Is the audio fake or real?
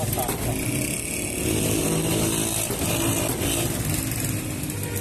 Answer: real